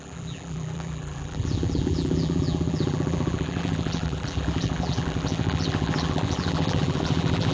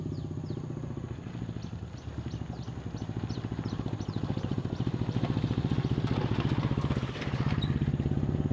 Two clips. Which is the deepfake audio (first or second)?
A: first